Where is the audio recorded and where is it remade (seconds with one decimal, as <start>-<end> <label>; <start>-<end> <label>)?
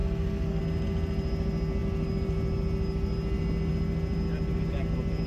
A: 0.0-0.6 remade; 0.6-5.3 recorded